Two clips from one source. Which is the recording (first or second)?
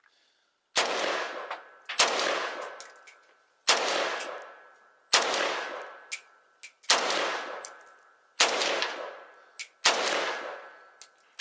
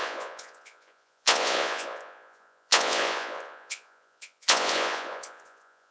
first